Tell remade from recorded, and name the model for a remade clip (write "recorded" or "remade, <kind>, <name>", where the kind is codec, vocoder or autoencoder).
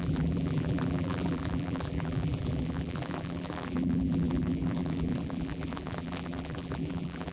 remade, vocoder, BigVGAN v2